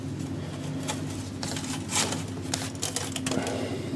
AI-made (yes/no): no